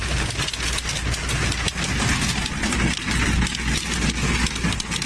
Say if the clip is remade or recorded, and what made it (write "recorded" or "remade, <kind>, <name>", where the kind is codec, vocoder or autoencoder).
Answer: recorded